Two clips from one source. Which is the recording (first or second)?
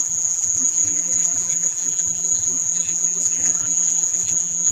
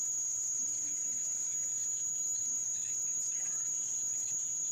second